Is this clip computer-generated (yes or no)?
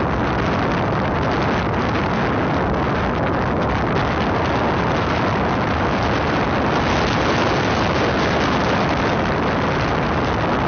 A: no